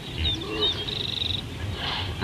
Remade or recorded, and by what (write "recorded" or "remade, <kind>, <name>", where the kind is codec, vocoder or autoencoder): recorded